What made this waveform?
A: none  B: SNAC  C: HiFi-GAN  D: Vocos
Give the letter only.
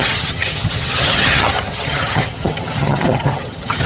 C